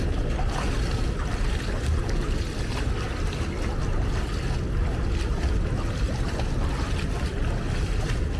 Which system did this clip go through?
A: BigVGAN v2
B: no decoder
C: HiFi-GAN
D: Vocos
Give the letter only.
B